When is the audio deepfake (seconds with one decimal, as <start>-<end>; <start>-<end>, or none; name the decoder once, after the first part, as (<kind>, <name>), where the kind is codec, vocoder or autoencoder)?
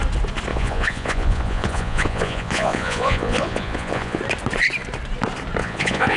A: 0.5-4.2 (vocoder, Vocos); 5.6-6.2